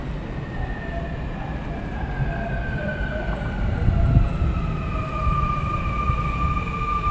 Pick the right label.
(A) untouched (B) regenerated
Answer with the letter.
A